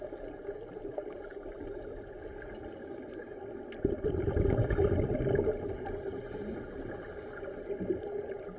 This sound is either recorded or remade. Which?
recorded